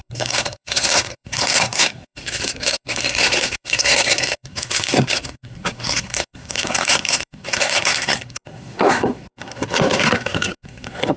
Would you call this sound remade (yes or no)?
yes